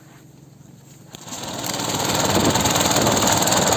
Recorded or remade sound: recorded